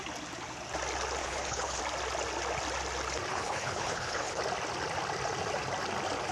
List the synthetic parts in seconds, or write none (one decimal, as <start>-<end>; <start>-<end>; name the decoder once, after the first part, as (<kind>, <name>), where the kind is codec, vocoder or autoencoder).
1.2-1.8 (codec, HILCodec); 3.3-4.4